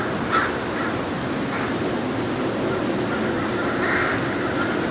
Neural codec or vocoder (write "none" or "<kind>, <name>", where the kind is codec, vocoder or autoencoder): vocoder, BigVGAN v2